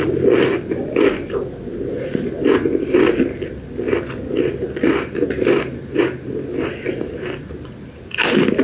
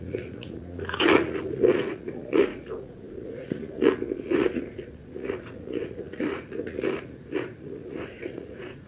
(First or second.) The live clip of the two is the first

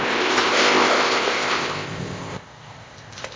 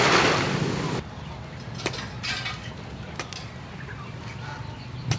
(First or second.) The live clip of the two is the second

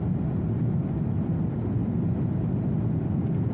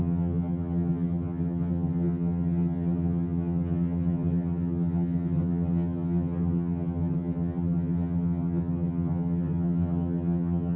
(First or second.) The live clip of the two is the first